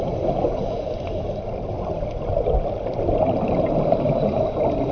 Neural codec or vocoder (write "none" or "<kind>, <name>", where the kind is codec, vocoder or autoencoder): none